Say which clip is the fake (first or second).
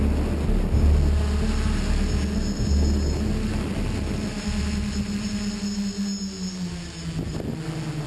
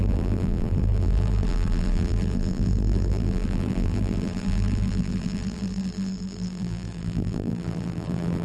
second